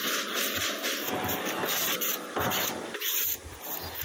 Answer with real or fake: real